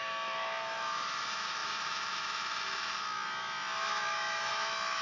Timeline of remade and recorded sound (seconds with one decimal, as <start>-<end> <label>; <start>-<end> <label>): 0.0-5.0 remade